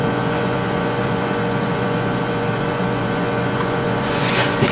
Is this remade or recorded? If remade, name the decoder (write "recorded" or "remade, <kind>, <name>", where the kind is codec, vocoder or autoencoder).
remade, vocoder, Vocos